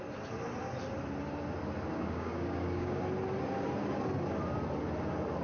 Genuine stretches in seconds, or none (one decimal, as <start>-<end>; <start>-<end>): 0.0-1.9; 3.0-5.4